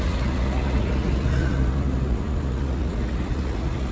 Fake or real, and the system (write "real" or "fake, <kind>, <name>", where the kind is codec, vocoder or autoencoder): fake, vocoder, Vocos